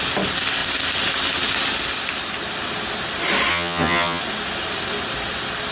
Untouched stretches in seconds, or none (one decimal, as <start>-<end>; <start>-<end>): 0.0-3.5; 4.2-5.7